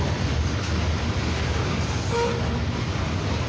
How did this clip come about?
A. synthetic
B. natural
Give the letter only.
B